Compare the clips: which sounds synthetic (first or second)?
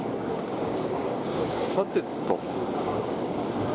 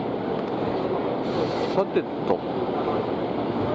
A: first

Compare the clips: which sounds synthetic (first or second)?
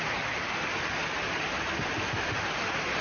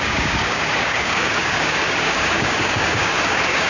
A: second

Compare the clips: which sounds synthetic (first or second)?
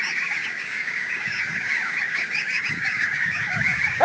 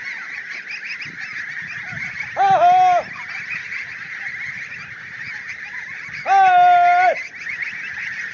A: first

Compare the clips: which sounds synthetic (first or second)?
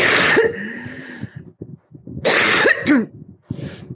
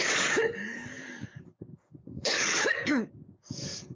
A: second